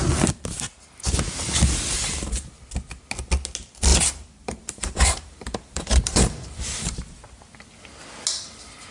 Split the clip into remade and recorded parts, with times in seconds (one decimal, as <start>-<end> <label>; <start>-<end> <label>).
0.0-3.9 recorded; 3.9-7.1 remade; 7.1-8.9 recorded

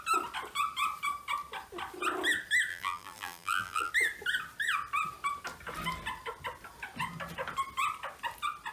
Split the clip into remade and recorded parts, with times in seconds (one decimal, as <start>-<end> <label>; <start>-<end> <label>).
0.0-2.7 recorded; 2.7-3.9 remade; 3.9-8.7 recorded

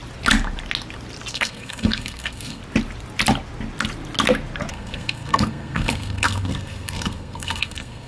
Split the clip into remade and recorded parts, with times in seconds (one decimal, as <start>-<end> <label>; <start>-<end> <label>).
0.0-1.3 recorded; 1.3-2.6 remade; 2.6-4.7 recorded; 4.7-8.1 remade

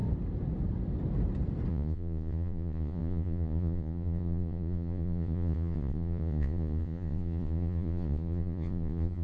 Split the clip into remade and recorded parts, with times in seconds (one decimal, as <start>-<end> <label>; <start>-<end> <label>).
0.0-1.7 recorded; 1.7-9.2 remade